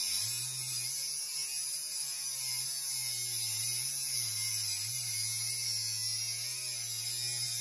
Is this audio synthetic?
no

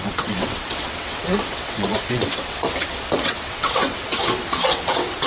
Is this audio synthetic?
yes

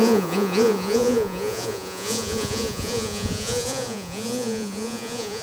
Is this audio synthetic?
yes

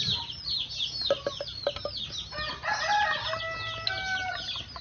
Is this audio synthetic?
no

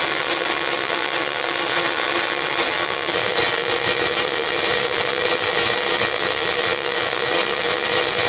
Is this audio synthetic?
yes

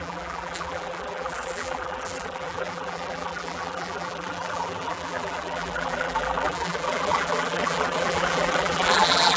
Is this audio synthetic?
yes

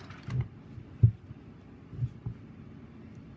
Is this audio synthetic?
no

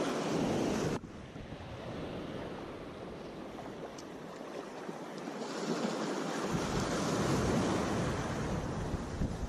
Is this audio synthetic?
no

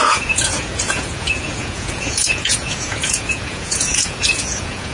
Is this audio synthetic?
yes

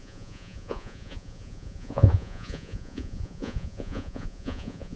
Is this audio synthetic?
yes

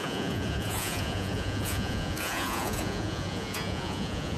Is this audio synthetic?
yes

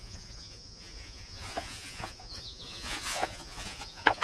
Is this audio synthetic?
yes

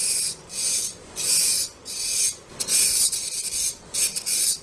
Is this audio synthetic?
yes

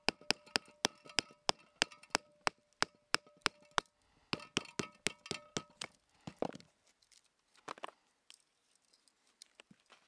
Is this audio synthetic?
no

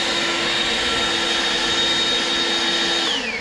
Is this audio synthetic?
no